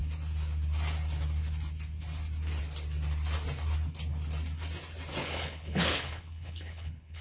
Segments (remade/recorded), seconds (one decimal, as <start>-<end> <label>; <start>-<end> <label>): 0.0-5.2 recorded; 5.2-7.2 remade